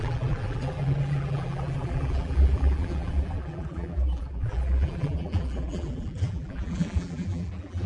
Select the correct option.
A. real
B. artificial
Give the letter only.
B